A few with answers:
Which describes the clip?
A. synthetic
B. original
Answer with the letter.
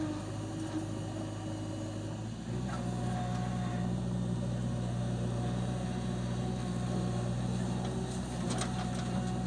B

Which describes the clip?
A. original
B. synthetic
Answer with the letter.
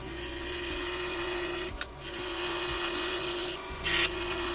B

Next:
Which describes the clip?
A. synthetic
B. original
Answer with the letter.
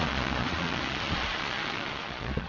A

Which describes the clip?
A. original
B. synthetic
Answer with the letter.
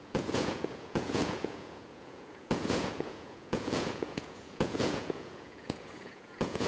B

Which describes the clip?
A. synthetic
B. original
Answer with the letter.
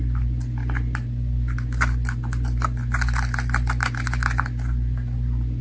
B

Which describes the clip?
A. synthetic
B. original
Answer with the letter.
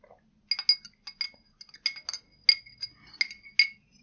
B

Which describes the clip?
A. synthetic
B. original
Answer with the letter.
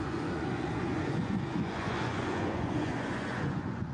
A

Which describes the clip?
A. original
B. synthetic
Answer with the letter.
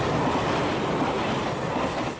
A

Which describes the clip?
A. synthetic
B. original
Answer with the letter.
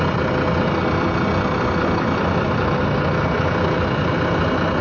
B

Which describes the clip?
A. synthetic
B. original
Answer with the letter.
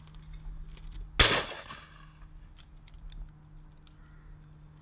B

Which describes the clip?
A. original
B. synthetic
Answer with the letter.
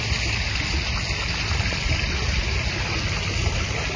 A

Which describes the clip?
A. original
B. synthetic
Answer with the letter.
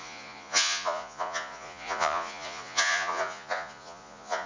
B